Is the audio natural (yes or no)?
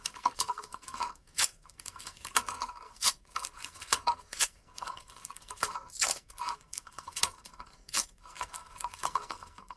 no